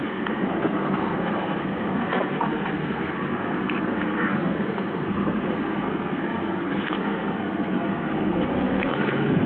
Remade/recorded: remade